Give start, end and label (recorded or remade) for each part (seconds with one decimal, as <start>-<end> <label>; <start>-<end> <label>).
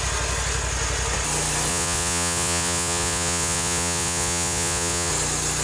0.0-1.7 recorded; 1.7-5.1 remade; 5.1-5.6 recorded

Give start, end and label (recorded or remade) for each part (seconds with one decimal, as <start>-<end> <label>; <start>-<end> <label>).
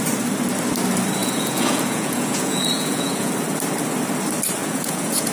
0.0-1.2 recorded; 1.2-3.3 remade; 3.3-4.6 recorded; 4.6-5.3 remade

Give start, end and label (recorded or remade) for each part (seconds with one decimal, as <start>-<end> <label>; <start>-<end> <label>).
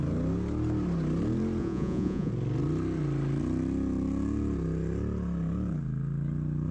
0.0-1.6 recorded; 1.6-2.3 remade; 2.3-6.7 recorded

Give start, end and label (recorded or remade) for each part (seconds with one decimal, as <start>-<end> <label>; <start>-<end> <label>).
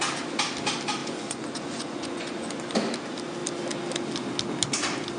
0.0-1.0 recorded; 1.0-2.6 remade; 2.6-5.2 recorded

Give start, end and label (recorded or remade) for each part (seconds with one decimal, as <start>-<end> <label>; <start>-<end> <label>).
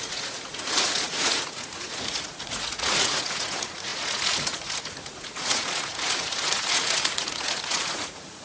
0.0-8.4 remade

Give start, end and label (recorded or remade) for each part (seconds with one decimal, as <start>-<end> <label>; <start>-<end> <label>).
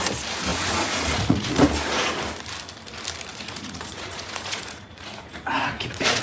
0.0-0.5 recorded; 0.5-1.6 remade; 1.6-3.3 recorded; 3.3-6.2 remade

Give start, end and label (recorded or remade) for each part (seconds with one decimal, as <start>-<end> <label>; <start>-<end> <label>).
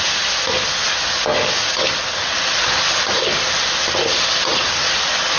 0.0-5.4 recorded